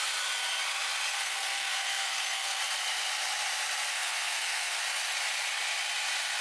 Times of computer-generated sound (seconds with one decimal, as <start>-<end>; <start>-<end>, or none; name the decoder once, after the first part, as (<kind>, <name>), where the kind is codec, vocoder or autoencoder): 1.1-2.6 (codec, SNAC); 3.9-4.8